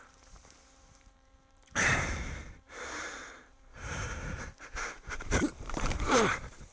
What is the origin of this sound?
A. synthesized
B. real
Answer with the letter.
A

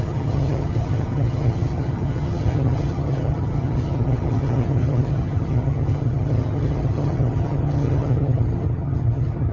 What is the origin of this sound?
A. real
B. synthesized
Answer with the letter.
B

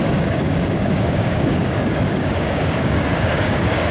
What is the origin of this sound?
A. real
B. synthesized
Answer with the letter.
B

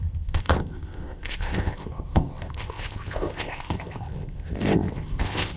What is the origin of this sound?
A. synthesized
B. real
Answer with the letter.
A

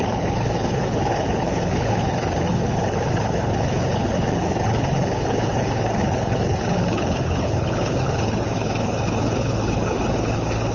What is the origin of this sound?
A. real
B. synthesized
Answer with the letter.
B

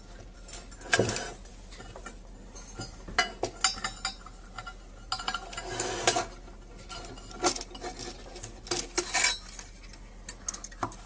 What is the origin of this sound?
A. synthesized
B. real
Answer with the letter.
B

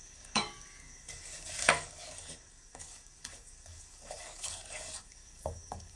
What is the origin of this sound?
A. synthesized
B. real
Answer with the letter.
A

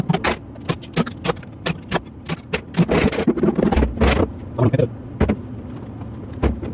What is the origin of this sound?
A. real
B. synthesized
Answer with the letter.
A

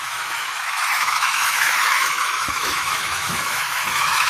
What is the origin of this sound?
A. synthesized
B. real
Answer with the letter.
A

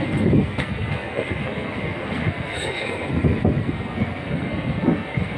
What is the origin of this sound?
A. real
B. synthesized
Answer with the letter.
B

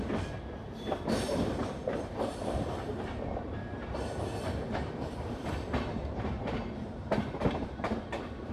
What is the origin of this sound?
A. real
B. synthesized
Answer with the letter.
B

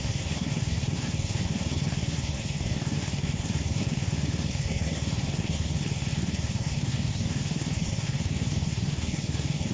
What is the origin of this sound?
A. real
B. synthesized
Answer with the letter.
B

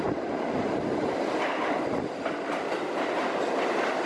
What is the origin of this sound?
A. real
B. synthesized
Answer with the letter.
B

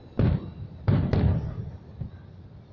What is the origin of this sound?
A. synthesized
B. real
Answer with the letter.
B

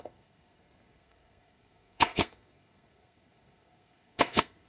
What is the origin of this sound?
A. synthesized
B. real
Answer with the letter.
A